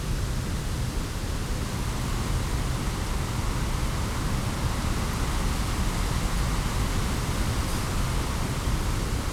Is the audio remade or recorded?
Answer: recorded